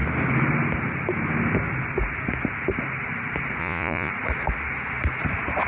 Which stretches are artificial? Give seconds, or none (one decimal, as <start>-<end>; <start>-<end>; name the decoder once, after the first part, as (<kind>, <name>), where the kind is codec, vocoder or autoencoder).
3.6-4.1 (vocoder, Vocos)